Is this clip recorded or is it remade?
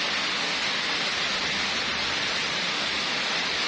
recorded